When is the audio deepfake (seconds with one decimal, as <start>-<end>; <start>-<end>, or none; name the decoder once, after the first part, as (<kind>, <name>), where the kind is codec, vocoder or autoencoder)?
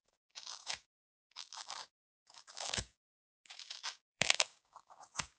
0.0-5.4 (codec, DAC)